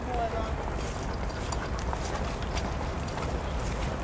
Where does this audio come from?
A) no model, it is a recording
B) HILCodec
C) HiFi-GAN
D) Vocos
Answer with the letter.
A